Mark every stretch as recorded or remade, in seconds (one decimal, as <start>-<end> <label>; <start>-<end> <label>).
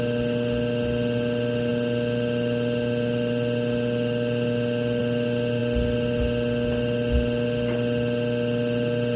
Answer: 0.0-9.2 recorded